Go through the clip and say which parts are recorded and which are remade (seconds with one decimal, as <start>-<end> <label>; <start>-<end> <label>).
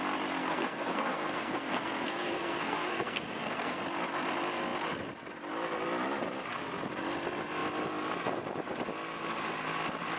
0.0-0.4 recorded; 0.4-3.8 remade; 3.8-10.2 recorded